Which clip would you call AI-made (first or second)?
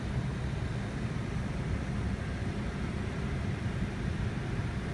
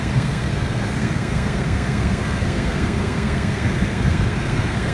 second